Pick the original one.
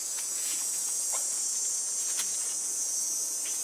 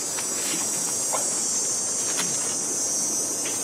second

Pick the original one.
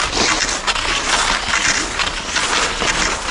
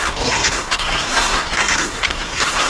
first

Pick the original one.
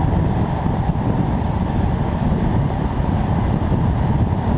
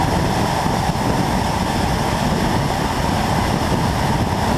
second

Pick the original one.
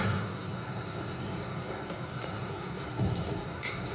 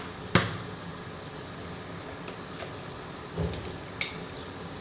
second